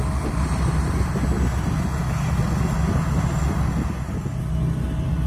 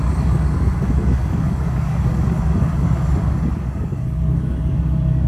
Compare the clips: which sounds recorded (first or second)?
first